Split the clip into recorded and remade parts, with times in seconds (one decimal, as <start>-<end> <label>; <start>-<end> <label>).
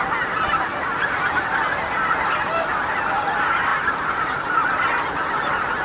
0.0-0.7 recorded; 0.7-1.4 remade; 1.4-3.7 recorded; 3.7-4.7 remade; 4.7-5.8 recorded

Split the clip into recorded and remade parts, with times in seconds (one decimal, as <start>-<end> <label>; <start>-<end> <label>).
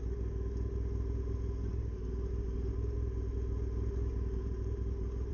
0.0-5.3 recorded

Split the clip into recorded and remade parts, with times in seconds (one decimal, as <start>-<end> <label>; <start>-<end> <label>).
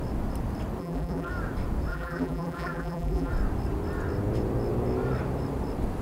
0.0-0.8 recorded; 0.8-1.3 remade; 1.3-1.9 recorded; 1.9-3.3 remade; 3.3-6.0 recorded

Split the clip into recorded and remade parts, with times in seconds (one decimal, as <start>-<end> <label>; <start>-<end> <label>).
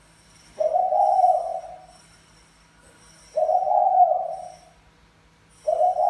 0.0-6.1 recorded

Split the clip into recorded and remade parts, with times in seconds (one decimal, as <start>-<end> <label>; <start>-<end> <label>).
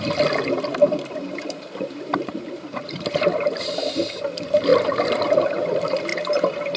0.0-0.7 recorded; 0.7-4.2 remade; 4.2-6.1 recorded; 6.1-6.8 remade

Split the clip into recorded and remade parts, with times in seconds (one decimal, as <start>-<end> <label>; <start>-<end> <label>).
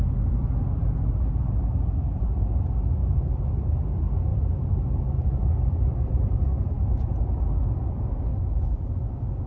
0.0-3.0 recorded; 3.0-3.5 remade; 3.5-4.3 recorded; 4.3-7.2 remade; 7.2-8.3 recorded; 8.3-9.1 remade; 9.1-9.5 recorded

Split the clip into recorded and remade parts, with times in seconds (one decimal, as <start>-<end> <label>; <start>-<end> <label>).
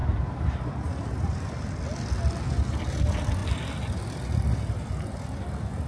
0.0-1.5 remade; 1.5-5.9 recorded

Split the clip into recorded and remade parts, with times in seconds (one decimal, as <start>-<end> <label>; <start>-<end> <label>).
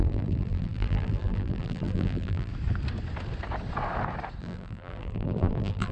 0.0-2.5 remade; 2.5-4.4 recorded; 4.4-5.9 remade